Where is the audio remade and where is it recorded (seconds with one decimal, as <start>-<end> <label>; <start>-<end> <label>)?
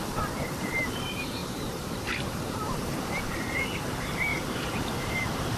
0.0-4.3 remade; 4.3-4.9 recorded; 4.9-5.6 remade